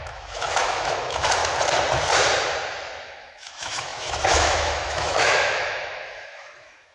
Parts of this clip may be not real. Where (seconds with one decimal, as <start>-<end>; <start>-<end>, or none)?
0.0-1.4; 3.0-6.9